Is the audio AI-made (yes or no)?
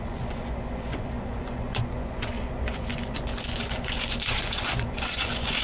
yes